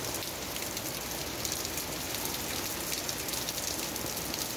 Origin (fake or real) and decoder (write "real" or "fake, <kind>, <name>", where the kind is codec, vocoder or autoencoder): real